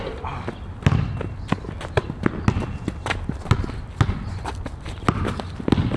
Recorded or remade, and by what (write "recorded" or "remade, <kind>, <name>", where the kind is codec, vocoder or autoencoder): recorded